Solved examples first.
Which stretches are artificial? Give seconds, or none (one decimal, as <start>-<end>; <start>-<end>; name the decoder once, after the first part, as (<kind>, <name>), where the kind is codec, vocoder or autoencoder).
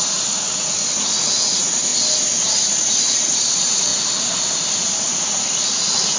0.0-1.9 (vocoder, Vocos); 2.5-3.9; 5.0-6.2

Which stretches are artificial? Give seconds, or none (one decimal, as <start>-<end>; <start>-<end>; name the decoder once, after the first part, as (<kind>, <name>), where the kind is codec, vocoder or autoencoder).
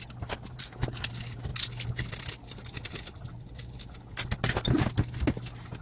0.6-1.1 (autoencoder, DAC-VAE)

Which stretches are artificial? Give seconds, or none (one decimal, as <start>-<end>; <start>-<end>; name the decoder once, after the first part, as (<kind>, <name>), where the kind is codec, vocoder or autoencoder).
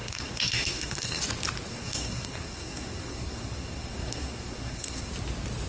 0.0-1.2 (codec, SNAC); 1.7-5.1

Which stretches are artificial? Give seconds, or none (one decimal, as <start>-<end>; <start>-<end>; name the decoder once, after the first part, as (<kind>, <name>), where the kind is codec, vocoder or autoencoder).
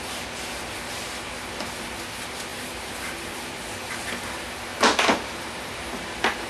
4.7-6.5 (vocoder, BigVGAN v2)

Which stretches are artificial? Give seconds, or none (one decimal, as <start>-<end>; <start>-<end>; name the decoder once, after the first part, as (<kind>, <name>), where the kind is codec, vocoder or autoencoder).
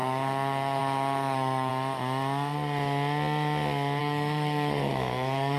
0.0-1.7 (codec, SNAC); 4.0-5.6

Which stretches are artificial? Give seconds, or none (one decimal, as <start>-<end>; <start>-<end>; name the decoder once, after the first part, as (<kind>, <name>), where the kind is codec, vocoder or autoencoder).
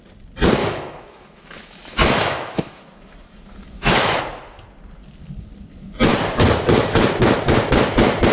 0.6-4.2 (autoencoder, DAC-VAE)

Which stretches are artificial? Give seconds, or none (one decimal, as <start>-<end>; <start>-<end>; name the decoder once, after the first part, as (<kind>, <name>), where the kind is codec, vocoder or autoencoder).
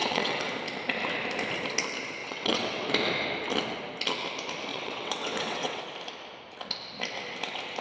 0.0-0.5 (vocoder, WaveNeXt); 2.2-2.9; 4.7-5.8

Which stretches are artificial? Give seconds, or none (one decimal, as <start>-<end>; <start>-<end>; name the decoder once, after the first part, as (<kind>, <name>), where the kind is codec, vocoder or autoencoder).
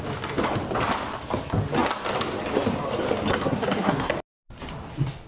3.3-4.1 (codec, SNAC)